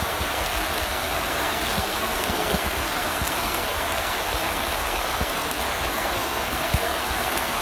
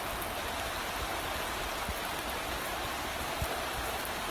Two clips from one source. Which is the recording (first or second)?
second